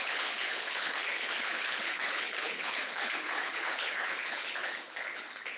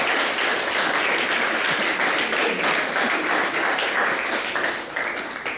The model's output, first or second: first